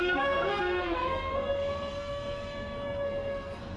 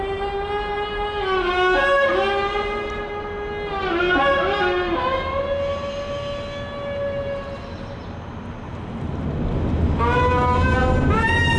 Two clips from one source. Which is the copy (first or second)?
first